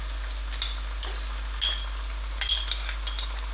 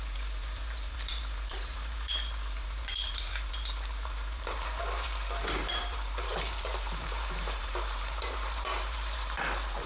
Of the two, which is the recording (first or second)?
first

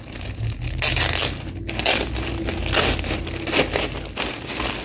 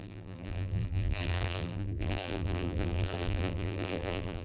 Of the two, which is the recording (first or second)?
first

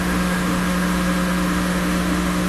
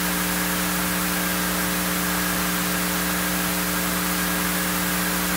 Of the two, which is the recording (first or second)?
second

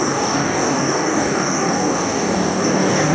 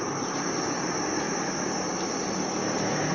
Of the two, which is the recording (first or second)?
second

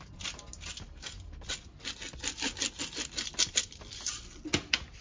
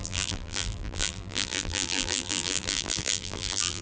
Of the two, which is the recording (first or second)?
first